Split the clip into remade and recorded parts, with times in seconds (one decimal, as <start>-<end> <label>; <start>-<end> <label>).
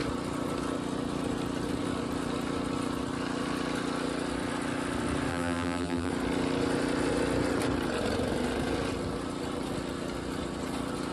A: 0.0-5.3 recorded; 5.3-6.1 remade; 6.1-11.1 recorded